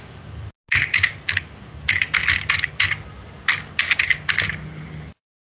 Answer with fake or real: real